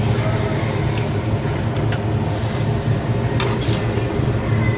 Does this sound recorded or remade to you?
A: recorded